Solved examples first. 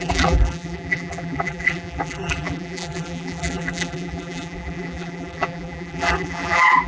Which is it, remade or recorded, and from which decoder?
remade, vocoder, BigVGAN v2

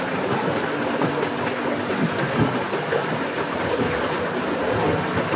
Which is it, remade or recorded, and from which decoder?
recorded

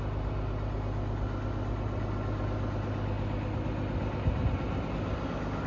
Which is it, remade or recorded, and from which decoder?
recorded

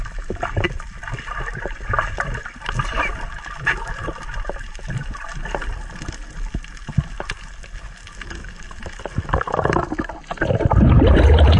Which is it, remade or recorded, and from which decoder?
recorded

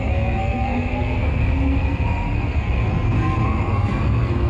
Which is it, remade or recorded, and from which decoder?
remade, codec, SNAC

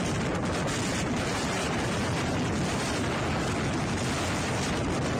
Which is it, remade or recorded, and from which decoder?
recorded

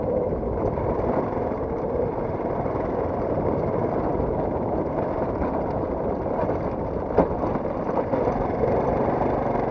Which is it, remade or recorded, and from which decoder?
remade, vocoder, BigVGAN v2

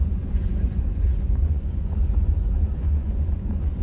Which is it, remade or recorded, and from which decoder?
remade, vocoder, Vocos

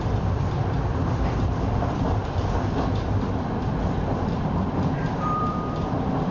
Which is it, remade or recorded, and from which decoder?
remade, vocoder, BigVGAN v2